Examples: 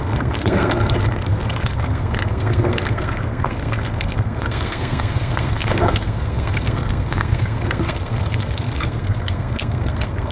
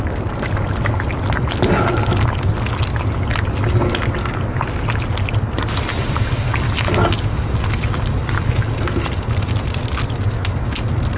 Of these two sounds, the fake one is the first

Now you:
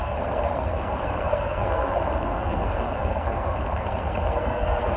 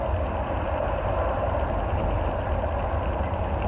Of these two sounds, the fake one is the first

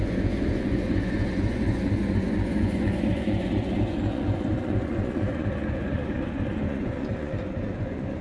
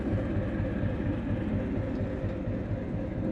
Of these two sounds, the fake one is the first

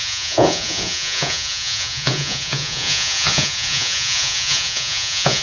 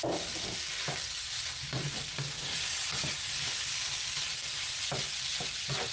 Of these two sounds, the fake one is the first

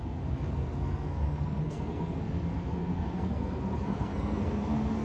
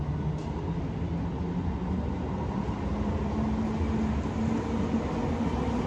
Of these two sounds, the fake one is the first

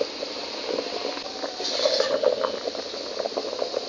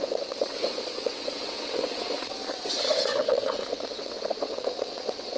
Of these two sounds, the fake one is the second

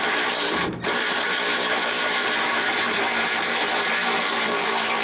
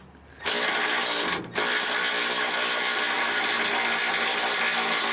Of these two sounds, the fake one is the first